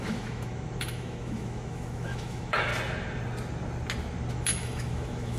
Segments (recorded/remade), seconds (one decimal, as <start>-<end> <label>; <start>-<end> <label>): 0.0-2.7 remade; 2.7-4.3 recorded; 4.3-5.4 remade